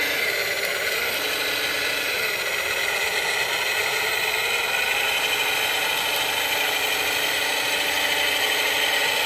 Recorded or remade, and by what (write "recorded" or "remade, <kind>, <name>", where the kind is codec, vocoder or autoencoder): recorded